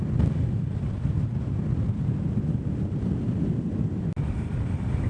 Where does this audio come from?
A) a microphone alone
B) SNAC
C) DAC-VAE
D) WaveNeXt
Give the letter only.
A